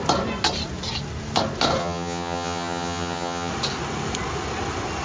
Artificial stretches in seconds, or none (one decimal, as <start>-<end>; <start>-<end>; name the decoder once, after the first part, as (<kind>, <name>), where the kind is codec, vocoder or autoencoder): 1.8-3.5 (vocoder, HiFi-GAN)